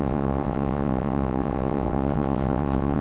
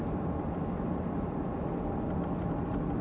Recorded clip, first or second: second